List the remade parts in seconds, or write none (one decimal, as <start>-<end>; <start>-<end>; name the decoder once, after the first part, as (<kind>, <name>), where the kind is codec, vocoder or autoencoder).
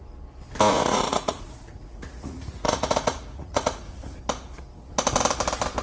0.7-4.2 (vocoder, Vocos)